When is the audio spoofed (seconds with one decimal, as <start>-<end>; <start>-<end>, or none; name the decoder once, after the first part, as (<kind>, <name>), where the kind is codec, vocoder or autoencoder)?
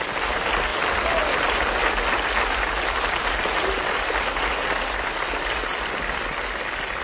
none